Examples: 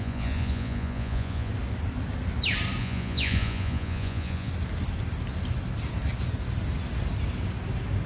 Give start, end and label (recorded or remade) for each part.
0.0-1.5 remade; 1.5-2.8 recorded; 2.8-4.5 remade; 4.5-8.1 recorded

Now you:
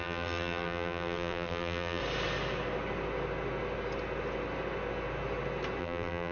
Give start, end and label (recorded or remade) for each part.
0.0-2.0 remade; 2.0-5.8 recorded; 5.8-6.3 remade